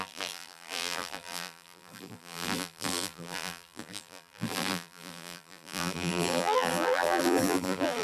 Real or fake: fake